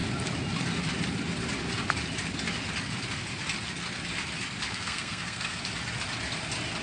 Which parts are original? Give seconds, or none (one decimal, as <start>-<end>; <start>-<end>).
0.0-4.7; 5.6-6.8

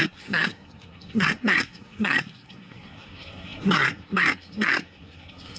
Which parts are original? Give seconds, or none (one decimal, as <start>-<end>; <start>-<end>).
none